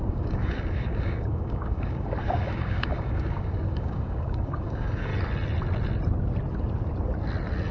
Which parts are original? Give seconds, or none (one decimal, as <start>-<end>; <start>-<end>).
5.1-7.7